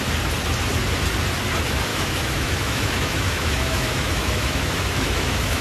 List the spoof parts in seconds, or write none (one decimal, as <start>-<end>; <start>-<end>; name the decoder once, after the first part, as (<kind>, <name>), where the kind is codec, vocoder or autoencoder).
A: 1.9-5.6 (autoencoder, DAC-VAE)